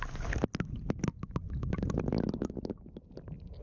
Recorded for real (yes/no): yes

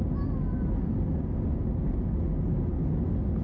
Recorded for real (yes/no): yes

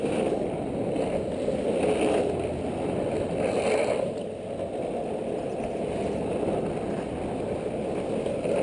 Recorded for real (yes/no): yes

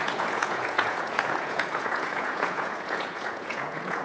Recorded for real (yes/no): no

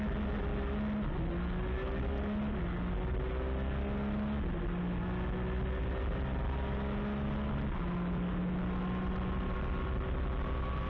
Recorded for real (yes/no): yes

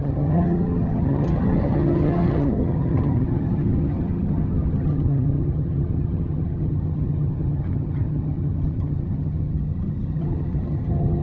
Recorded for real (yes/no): no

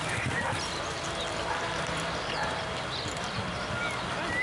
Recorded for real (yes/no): yes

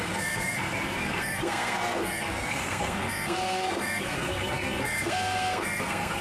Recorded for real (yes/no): no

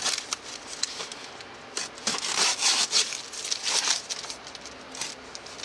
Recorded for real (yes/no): yes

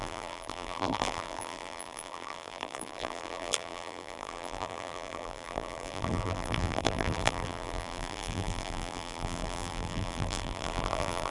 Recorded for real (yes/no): no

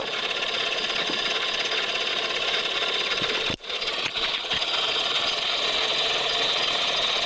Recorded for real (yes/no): no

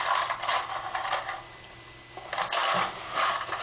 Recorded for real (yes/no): yes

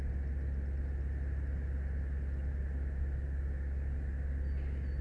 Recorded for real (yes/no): yes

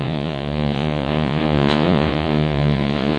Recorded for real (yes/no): no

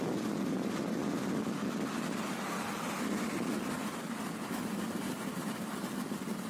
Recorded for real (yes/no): yes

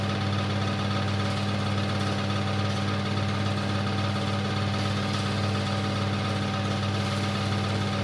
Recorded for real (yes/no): yes